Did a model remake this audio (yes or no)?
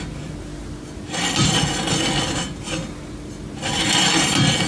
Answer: no